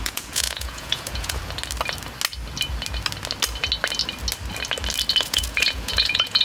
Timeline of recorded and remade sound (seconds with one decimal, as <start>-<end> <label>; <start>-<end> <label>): 0.0-1.4 remade; 1.4-5.2 recorded; 5.2-6.4 remade